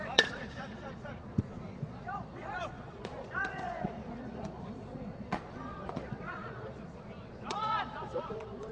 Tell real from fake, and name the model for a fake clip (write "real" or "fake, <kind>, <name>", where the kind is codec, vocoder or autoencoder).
fake, vocoder, Vocos